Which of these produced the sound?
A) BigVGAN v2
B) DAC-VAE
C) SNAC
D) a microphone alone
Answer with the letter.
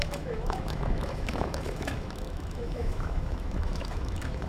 B